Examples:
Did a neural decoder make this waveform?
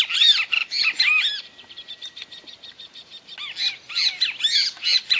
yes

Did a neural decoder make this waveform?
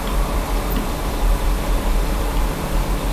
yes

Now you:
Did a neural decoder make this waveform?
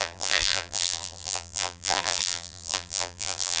yes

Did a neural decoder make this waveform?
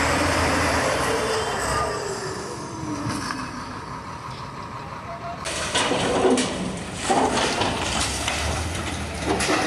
yes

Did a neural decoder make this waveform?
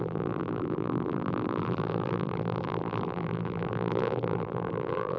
yes